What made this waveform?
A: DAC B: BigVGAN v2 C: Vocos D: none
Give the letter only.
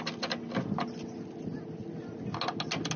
D